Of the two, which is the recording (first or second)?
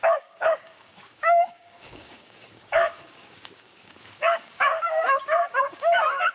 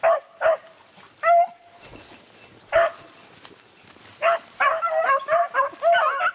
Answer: second